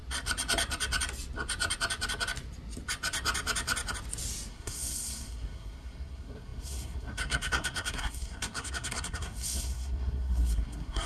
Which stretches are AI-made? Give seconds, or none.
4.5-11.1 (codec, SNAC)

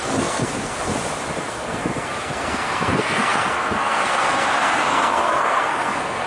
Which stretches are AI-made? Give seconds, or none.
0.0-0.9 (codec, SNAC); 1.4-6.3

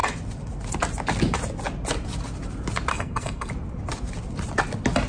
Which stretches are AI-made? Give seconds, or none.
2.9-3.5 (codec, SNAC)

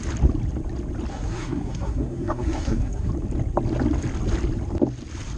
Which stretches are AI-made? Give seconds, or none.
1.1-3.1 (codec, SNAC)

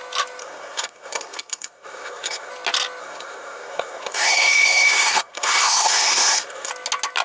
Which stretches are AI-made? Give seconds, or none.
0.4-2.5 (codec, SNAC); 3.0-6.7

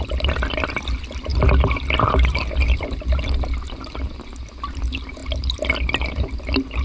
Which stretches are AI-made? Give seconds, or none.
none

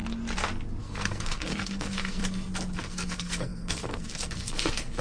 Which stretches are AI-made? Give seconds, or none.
0.8-2.2 (codec, SNAC); 2.8-5.0

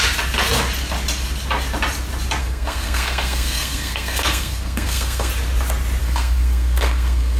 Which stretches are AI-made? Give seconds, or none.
2.4-5.3 (codec, SNAC); 6.0-7.4